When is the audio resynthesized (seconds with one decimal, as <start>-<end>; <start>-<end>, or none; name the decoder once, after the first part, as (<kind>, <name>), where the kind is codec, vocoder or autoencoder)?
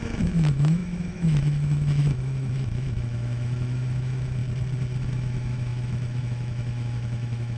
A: 0.0-4.4 (autoencoder, DAC-VAE); 5.0-7.6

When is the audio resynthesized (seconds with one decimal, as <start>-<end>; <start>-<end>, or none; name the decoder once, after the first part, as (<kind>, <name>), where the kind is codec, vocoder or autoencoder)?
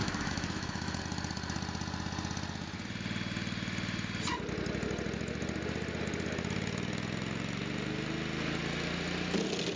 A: 0.0-1.0 (autoencoder, DAC-VAE)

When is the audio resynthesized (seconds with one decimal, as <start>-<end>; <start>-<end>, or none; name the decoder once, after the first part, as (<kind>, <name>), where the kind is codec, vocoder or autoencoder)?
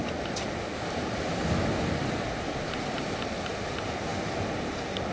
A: none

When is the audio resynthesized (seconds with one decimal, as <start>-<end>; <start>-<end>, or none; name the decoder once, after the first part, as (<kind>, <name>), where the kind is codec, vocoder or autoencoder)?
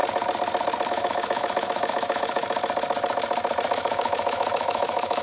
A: 0.9-2.4 (autoencoder, DAC-VAE); 3.7-5.2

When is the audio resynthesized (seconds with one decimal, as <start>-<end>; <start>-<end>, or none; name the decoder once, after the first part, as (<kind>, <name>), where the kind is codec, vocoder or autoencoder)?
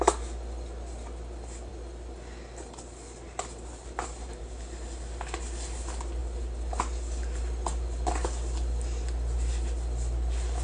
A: none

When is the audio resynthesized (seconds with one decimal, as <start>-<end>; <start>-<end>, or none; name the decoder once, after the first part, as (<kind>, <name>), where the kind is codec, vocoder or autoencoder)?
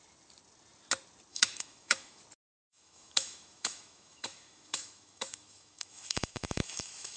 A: 1.3-2.2 (autoencoder, DAC-VAE); 2.6-7.2